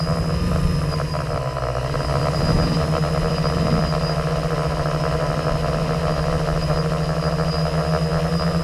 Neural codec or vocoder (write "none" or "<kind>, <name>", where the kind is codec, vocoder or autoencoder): none